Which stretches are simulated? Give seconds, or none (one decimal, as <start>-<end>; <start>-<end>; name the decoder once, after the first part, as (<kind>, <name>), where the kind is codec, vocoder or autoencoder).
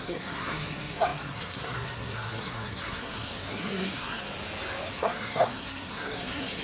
0.0-4.2 (codec, SNAC); 4.9-6.6